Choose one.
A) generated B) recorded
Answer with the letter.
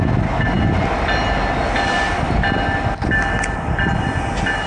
B